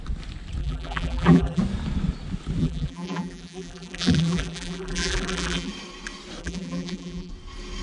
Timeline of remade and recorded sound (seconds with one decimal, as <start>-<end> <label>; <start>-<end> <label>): 0.0-0.6 recorded; 0.6-1.6 remade; 1.6-2.6 recorded; 2.6-5.7 remade; 5.7-6.4 recorded; 6.4-7.3 remade; 7.3-7.8 recorded